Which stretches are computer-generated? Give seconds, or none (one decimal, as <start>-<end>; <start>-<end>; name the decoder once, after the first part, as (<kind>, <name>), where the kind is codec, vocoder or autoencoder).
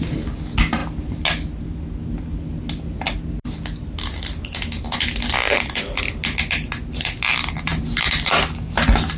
none